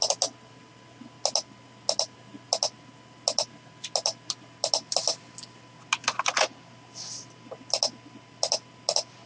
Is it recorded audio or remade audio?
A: recorded